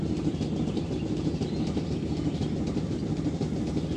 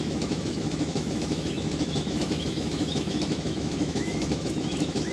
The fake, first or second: second